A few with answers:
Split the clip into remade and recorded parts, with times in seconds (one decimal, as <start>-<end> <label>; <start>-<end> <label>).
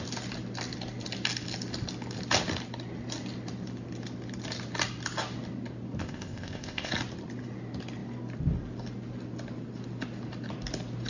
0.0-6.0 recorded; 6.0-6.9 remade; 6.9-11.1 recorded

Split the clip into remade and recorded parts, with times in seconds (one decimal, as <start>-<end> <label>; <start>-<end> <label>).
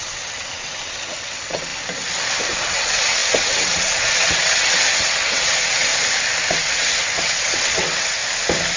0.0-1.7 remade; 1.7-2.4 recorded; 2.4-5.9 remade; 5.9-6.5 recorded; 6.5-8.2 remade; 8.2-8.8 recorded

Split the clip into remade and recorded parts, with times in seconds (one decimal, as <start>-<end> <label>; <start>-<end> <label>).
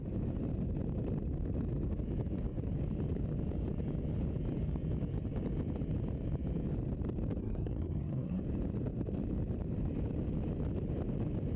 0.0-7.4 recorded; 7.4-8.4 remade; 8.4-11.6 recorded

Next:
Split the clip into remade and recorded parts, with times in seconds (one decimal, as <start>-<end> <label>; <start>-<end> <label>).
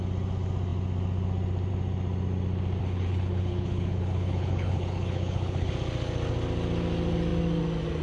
0.0-2.8 recorded; 2.8-5.7 remade; 5.7-8.0 recorded